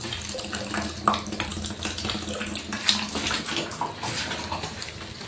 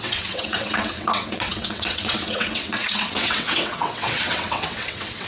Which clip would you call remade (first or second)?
second